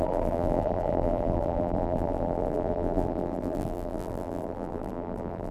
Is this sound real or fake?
fake